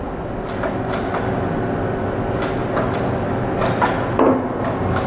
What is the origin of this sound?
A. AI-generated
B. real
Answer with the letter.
B